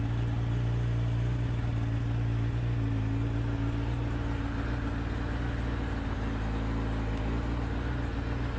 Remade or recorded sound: recorded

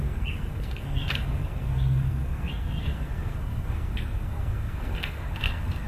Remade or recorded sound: remade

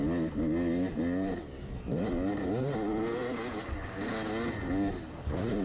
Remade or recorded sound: recorded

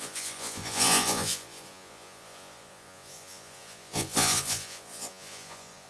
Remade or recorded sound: remade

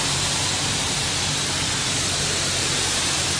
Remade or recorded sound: remade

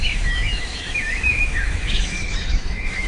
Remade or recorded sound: remade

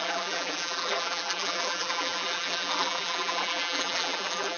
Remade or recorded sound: remade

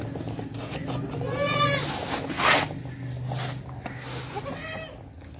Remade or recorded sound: recorded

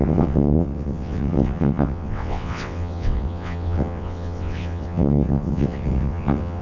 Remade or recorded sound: remade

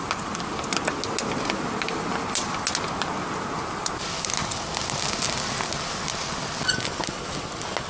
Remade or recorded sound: recorded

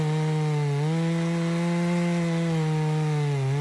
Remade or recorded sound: recorded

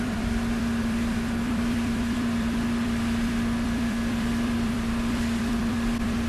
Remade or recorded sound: remade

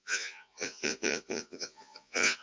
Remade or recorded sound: remade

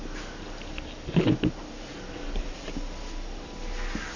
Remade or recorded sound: recorded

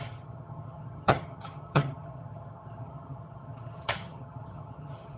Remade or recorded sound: remade